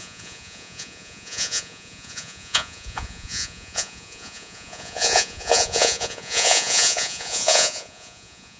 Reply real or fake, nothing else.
fake